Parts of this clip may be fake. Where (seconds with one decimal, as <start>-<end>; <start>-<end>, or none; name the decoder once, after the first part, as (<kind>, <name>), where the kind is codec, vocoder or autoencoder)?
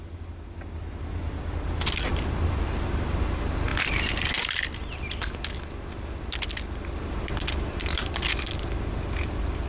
2.1-3.2 (vocoder, BigVGAN v2)